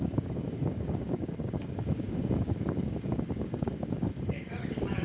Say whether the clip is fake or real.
fake